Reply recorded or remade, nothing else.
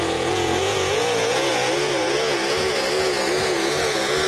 remade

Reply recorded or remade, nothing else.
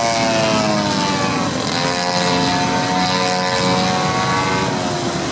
recorded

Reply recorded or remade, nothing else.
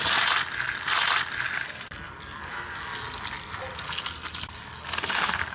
recorded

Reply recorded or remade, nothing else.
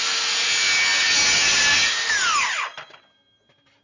recorded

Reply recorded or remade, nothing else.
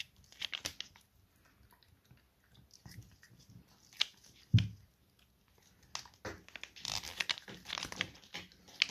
recorded